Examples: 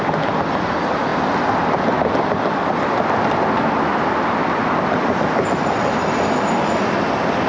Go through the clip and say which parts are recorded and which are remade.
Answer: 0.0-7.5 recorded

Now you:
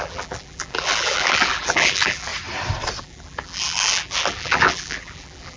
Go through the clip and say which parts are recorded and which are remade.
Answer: 0.0-2.3 remade; 2.3-3.0 recorded; 3.0-5.6 remade